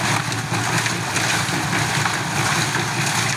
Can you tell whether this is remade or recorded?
recorded